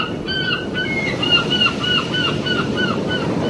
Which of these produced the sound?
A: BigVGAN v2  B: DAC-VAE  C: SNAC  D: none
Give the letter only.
A